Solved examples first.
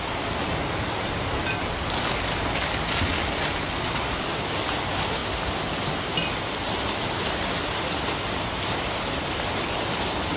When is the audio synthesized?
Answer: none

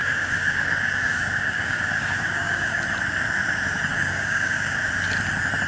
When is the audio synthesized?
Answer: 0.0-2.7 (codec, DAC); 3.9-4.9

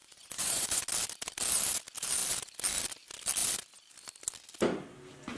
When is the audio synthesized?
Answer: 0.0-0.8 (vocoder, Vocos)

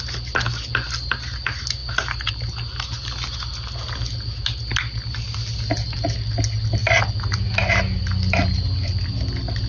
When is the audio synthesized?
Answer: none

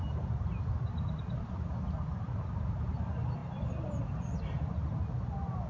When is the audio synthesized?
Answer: none

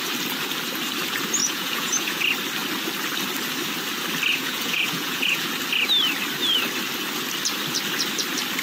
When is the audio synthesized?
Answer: 1.4-2.2 (vocoder, Vocos); 4.3-5.5